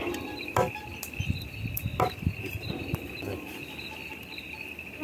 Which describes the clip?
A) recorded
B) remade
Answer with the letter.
B